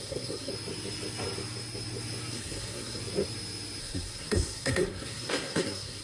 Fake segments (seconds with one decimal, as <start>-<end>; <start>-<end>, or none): 0.0-0.5; 2.3-3.0; 3.8-6.0